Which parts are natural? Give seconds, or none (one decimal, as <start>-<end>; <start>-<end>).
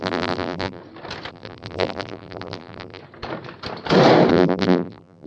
0.8-1.3; 3.0-4.3